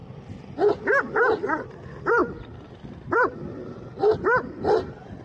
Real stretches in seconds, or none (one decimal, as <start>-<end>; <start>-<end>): 0.0-5.2